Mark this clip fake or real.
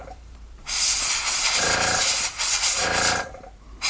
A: fake